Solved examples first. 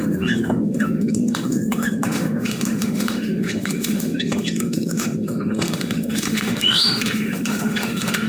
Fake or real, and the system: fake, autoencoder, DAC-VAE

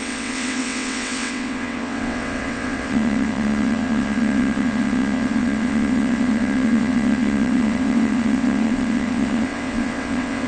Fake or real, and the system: fake, vocoder, WaveNeXt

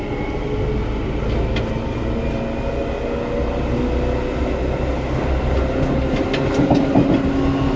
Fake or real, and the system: real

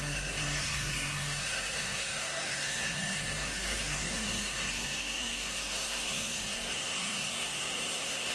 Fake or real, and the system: fake, codec, SNAC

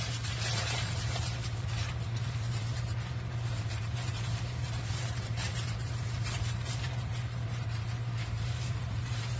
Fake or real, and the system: fake, vocoder, BigVGAN v2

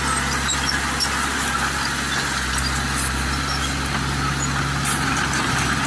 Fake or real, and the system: real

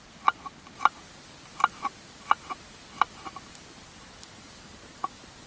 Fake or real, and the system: real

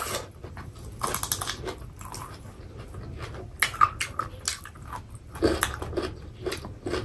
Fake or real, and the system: real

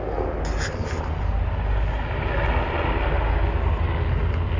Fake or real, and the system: real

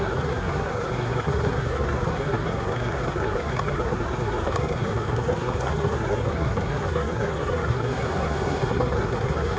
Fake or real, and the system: fake, codec, SNAC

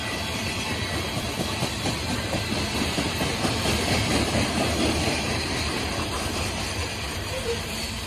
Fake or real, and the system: fake, vocoder, BigVGAN v2